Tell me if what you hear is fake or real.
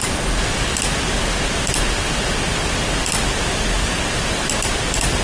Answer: real